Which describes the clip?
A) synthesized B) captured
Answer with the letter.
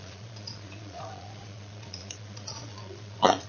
A